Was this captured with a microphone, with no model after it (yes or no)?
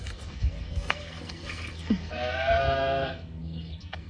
no